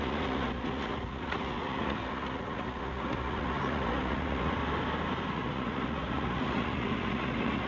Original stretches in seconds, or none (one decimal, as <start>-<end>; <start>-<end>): 4.6-5.3